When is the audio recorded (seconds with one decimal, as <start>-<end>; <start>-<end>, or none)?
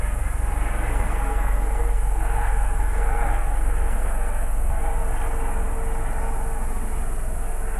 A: 0.0-0.9; 4.8-7.8